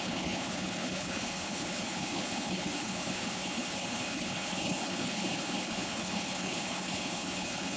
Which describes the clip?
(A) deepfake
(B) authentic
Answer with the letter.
A